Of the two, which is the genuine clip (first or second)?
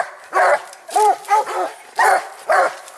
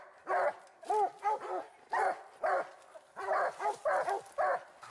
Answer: second